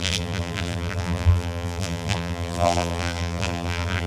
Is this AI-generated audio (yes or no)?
yes